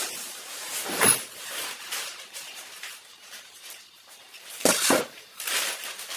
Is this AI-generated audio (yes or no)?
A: yes